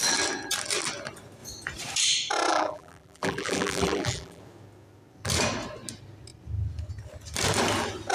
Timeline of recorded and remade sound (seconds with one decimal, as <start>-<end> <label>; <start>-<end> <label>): 0.0-2.5 recorded; 2.5-4.4 remade; 4.4-8.1 recorded